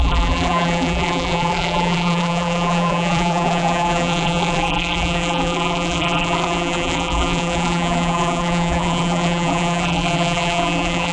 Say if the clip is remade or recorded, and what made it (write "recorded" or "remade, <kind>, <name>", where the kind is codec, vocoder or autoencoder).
remade, vocoder, BigVGAN v2